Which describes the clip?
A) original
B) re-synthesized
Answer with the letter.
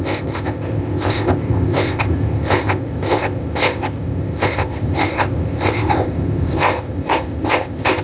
B